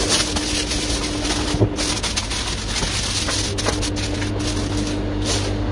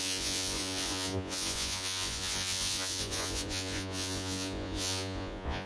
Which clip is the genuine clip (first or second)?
first